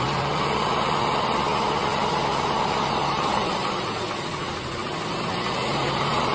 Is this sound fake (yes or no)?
no